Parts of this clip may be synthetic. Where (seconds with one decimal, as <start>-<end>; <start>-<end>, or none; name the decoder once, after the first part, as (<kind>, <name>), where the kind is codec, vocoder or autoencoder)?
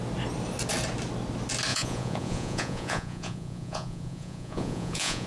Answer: 1.7-5.3 (vocoder, Vocos)